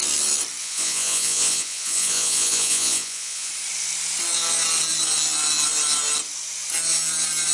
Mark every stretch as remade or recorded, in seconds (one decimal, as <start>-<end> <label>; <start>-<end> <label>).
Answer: 0.0-0.6 recorded; 0.6-3.5 remade; 3.5-7.5 recorded